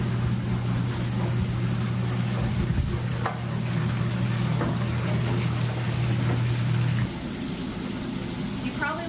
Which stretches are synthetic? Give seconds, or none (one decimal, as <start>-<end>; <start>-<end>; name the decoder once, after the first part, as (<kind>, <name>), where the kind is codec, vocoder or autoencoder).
none